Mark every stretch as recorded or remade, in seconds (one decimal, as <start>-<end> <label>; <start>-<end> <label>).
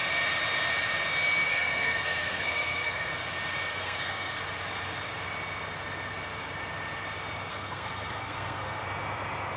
0.0-1.5 recorded; 1.5-3.1 remade; 3.1-3.7 recorded; 3.7-4.4 remade; 4.4-7.5 recorded; 7.5-8.8 remade; 8.8-9.6 recorded